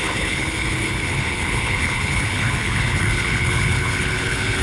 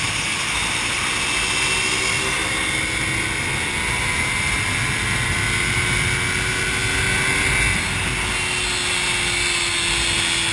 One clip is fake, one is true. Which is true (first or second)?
second